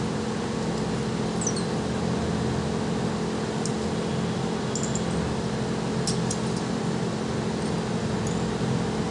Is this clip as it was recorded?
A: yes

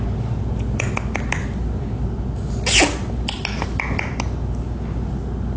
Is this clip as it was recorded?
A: yes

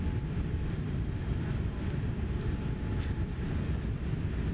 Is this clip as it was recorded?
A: yes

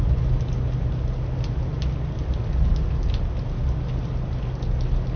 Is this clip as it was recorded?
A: yes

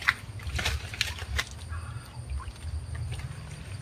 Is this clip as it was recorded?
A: yes